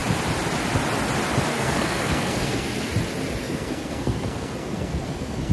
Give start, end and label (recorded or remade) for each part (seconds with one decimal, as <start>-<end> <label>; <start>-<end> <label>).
0.0-1.5 recorded; 1.5-2.9 remade; 2.9-3.4 recorded; 3.4-5.5 remade